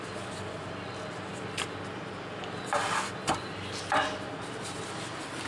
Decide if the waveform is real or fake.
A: real